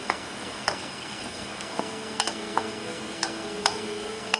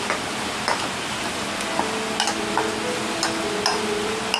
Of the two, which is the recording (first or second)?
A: second